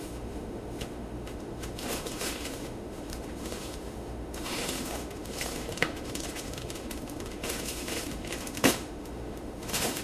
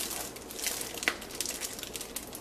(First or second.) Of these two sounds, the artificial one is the first